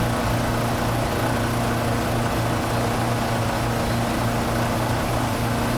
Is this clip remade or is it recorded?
recorded